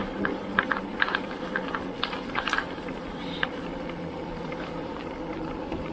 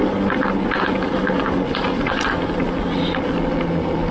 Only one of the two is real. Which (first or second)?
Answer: second